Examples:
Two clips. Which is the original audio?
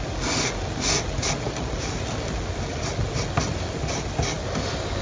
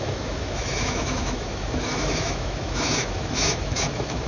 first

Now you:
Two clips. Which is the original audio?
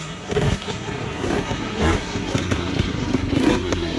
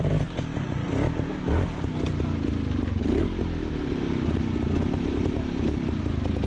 second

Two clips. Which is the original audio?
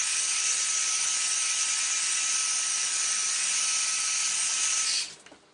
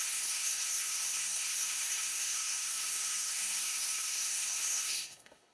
first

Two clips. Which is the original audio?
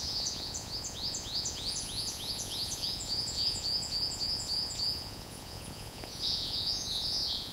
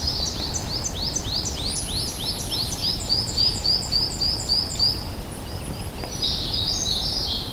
second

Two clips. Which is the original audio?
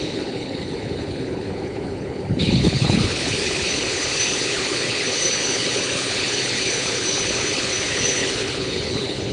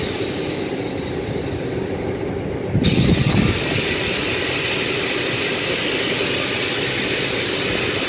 second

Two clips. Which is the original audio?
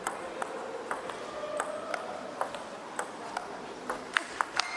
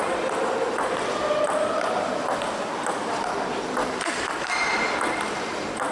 first